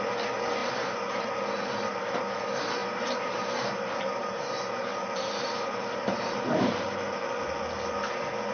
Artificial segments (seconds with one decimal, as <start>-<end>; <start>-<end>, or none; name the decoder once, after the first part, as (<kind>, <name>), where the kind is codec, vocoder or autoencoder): 0.6-1.3 (vocoder, BigVGAN v2); 2.8-7.2